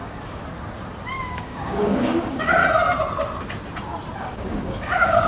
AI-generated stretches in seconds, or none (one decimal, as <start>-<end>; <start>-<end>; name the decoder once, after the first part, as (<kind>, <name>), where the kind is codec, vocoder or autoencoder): 0.0-0.4 (codec, DAC); 1.1-2.6; 4.2-5.3